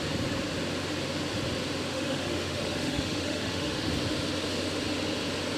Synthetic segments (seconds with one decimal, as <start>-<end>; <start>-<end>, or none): 1.9-3.9